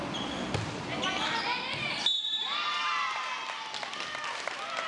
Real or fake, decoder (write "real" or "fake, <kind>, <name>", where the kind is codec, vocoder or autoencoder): real